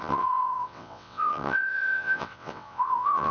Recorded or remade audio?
remade